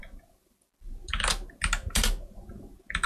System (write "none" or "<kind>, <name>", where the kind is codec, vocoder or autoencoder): none